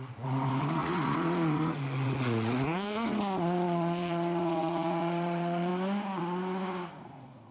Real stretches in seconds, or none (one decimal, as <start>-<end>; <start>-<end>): 5.7-6.9